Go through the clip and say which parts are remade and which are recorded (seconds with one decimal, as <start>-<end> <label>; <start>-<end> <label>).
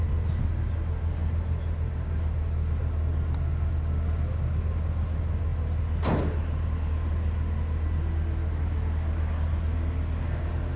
0.0-10.8 recorded